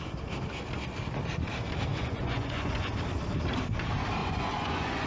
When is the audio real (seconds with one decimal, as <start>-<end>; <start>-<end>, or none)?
0.0-1.9; 2.9-4.2